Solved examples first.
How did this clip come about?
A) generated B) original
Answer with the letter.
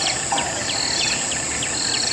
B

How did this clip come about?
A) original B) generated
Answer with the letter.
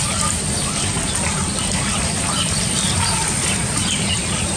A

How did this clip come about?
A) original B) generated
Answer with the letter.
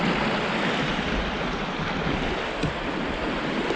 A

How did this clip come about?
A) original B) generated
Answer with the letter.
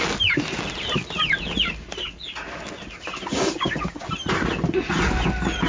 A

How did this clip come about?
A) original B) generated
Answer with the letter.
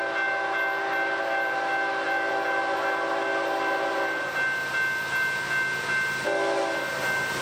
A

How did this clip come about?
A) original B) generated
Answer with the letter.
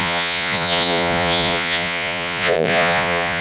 B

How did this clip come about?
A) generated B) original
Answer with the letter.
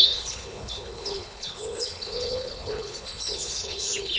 A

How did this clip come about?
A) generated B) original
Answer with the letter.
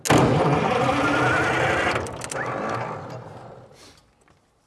B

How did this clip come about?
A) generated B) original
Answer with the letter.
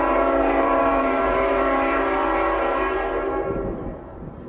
A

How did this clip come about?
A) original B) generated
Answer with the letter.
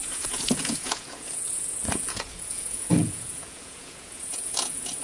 B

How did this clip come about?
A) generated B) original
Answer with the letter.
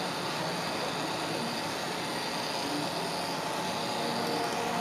B